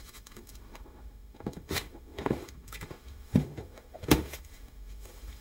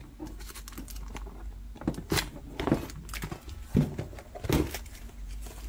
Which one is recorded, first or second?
second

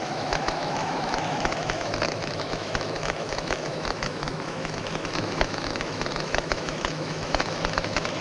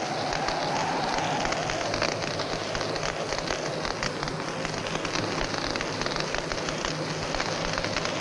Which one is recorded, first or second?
second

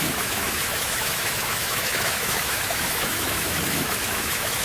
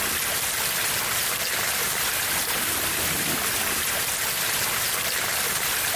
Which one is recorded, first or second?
second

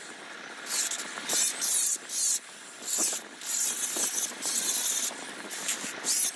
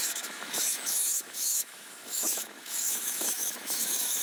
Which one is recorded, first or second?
first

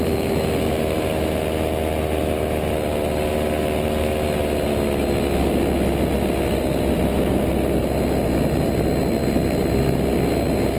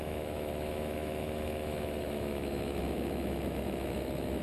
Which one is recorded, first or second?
first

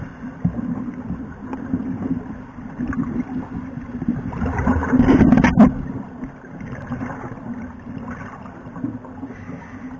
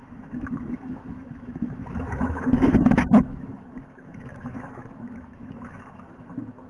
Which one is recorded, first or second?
first